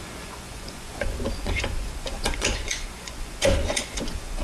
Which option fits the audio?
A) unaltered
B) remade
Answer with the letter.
B